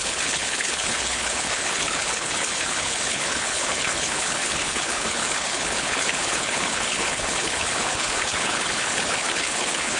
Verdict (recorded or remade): remade